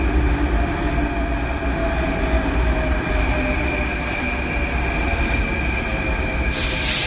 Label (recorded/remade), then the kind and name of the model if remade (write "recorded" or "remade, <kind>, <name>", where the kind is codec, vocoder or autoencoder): recorded